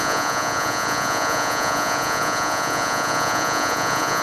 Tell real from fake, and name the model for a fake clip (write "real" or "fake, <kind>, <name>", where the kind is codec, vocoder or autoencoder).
fake, vocoder, Vocos